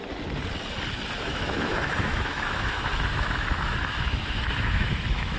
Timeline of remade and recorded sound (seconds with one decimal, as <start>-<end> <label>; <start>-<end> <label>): 0.0-1.2 recorded; 1.2-5.4 remade